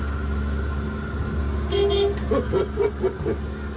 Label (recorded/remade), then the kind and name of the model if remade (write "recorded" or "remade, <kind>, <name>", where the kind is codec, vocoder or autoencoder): recorded